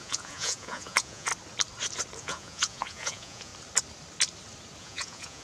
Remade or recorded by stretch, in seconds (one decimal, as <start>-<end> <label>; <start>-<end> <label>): 0.0-1.3 remade; 1.3-2.2 recorded; 2.2-3.5 remade; 3.5-4.8 recorded; 4.8-5.4 remade

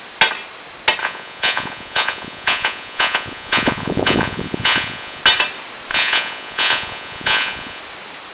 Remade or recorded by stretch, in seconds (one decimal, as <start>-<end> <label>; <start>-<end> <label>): 0.0-1.0 recorded; 1.0-5.2 remade; 5.2-5.9 recorded; 5.9-7.8 remade; 7.8-8.3 recorded

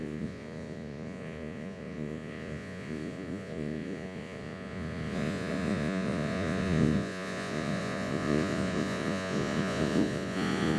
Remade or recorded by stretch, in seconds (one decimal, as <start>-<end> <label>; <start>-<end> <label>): 0.0-10.8 remade

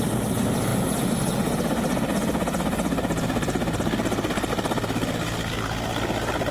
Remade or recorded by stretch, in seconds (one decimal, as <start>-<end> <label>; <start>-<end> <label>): 0.0-6.5 recorded